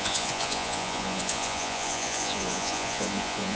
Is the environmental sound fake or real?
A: fake